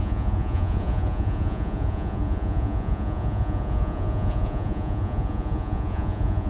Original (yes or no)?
no